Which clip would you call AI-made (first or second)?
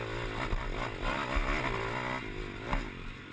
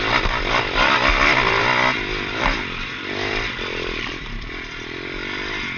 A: second